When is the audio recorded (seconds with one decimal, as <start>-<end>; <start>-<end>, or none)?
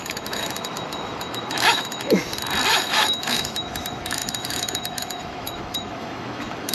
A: 2.2-2.7